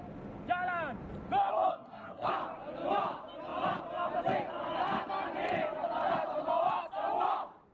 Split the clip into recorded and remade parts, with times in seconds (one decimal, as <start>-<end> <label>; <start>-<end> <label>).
0.0-1.5 recorded; 1.5-2.3 remade; 2.3-7.7 recorded